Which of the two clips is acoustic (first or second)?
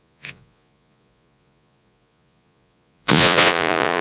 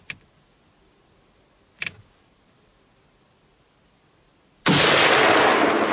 second